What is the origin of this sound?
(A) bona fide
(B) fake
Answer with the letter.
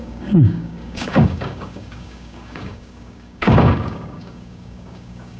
B